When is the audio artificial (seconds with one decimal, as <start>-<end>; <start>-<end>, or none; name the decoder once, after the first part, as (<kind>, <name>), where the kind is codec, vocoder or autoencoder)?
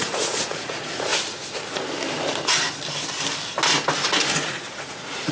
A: 0.0-1.1 (vocoder, Vocos); 4.3-5.3